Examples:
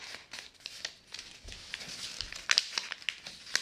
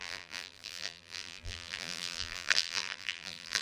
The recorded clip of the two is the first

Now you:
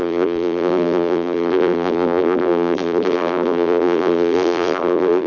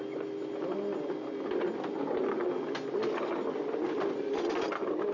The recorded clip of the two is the second